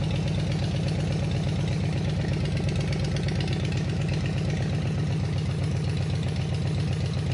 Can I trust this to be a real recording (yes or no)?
yes